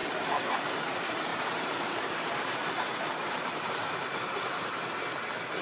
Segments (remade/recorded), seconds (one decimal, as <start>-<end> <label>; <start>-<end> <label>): 0.0-0.6 remade; 0.6-1.3 recorded; 1.3-4.7 remade; 4.7-5.6 recorded